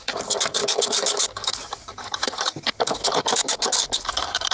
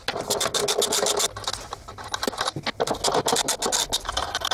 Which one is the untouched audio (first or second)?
second